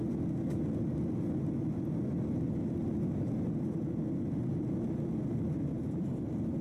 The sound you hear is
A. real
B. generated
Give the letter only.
A